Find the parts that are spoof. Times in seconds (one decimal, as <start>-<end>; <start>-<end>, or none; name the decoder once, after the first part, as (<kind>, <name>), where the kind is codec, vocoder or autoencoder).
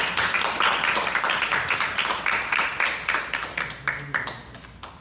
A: none